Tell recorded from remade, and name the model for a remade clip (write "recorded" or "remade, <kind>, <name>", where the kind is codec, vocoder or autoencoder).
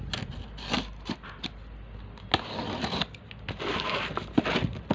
recorded